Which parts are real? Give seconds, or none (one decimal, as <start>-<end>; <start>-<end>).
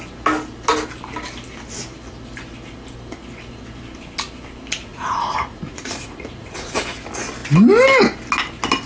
0.0-4.9; 6.8-8.9